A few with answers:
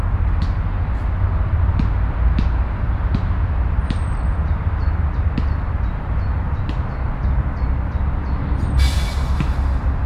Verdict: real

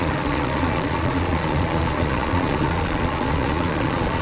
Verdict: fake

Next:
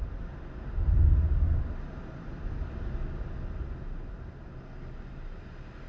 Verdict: real